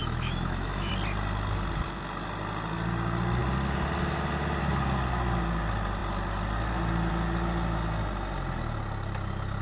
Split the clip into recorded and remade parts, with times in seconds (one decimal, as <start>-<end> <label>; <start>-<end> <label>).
0.0-0.9 remade; 0.9-9.6 recorded